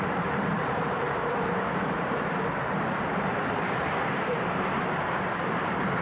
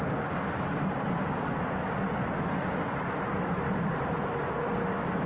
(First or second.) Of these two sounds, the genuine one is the second